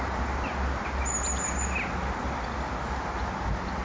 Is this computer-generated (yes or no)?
no